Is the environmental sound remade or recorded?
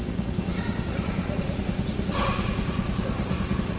remade